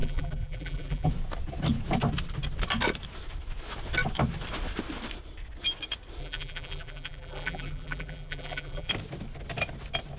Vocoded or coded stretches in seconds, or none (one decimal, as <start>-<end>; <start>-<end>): 0.0-1.1; 6.2-8.9